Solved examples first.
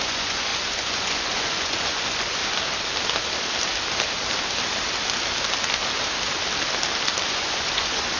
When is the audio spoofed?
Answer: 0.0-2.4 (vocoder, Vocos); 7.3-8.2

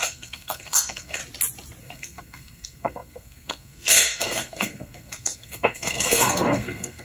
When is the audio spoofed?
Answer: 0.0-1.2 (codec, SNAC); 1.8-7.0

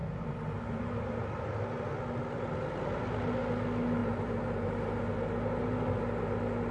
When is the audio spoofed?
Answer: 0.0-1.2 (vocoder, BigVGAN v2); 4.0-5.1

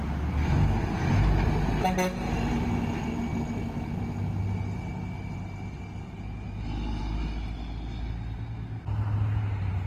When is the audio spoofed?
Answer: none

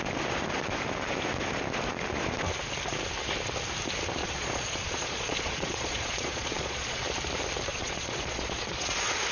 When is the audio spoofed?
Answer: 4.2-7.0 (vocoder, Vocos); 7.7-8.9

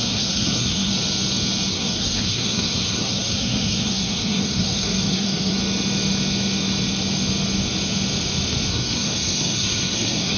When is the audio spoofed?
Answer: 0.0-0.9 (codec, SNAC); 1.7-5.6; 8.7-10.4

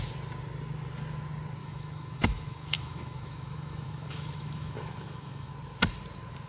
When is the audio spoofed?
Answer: 1.6-5.5 (autoencoder, DAC-VAE)

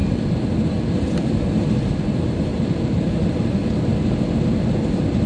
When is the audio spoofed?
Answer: 0.9-3.6 (vocoder, BigVGAN v2)